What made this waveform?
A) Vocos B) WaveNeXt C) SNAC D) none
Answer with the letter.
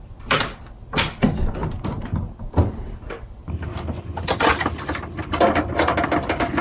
D